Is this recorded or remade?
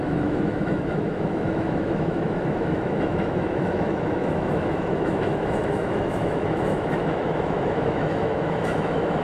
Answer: remade